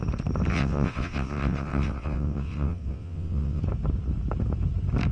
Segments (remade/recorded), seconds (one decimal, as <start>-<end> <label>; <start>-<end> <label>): 0.0-0.5 recorded; 0.5-3.6 remade; 3.6-5.1 recorded